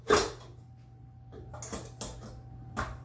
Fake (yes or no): no